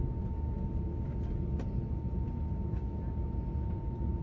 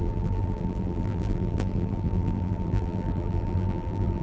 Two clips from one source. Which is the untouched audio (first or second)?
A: first